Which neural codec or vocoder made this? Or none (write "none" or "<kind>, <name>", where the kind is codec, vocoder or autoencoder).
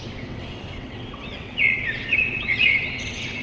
vocoder, WaveNeXt